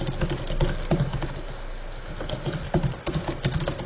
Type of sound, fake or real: real